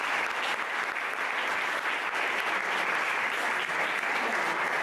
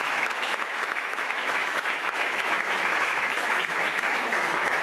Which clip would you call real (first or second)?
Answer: first